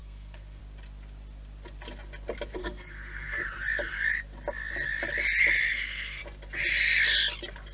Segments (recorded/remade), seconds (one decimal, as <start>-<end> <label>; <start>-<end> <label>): 0.0-0.6 remade; 0.6-2.6 recorded; 2.6-3.4 remade; 3.4-5.7 recorded; 5.7-6.2 remade; 6.2-7.7 recorded